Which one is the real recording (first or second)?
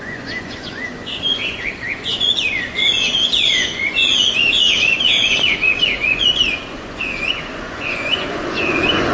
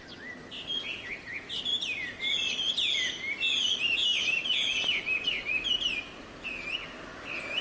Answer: second